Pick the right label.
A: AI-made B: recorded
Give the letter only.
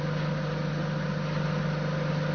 B